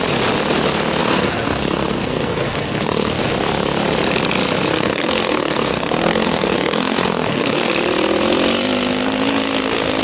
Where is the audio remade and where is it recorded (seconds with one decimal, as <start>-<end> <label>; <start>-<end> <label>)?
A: 0.0-1.0 recorded; 1.0-3.1 remade; 3.1-4.7 recorded; 4.7-7.7 remade; 7.7-10.0 recorded